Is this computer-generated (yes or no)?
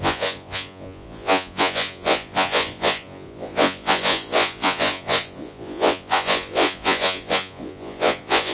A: yes